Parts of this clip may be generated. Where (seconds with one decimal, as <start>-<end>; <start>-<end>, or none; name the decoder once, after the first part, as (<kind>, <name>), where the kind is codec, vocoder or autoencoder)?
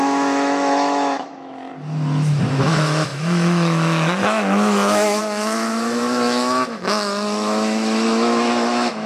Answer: 0.0-1.7 (autoencoder, DAC-VAE); 2.5-9.1